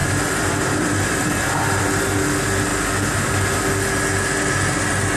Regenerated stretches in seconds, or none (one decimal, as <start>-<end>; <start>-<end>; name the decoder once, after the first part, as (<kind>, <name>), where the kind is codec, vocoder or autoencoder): 0.0-2.0 (vocoder, BigVGAN v2)